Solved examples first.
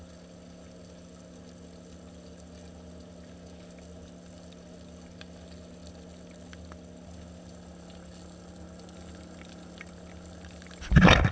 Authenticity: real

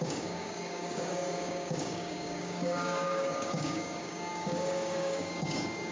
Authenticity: fake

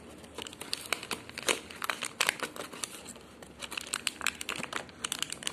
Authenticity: real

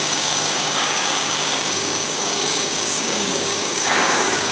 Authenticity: fake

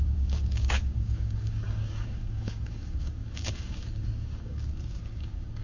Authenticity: fake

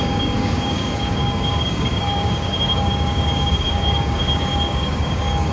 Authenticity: fake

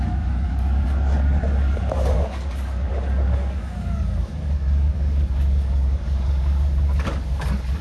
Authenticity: fake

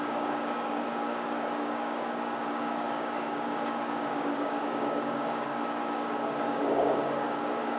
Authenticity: fake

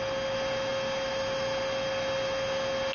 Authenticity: real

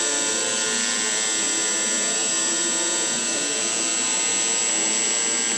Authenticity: real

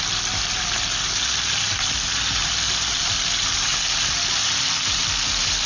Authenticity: real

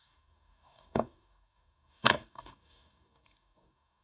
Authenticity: fake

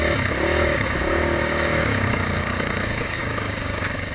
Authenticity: fake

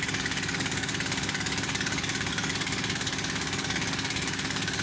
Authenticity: fake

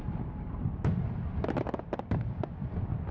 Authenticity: real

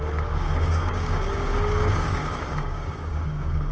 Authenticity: fake